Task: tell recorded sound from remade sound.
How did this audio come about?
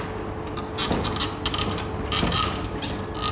recorded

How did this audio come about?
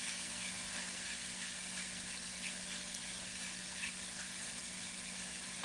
remade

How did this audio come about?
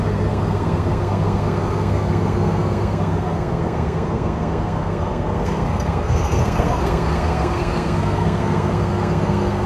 remade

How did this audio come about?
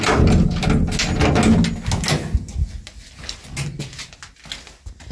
recorded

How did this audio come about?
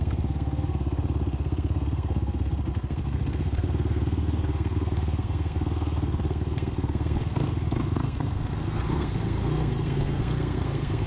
remade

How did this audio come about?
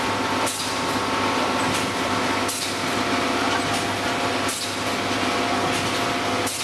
recorded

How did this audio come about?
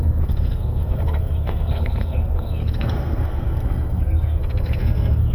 remade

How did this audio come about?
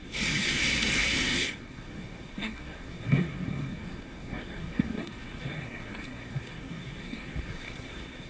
remade